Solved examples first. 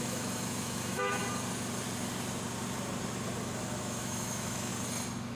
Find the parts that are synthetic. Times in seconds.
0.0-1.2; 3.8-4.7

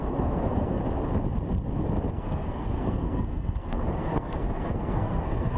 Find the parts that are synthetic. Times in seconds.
0.0-0.8; 2.1-5.6

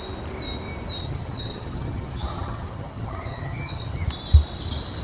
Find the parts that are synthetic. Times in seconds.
1.0-4.0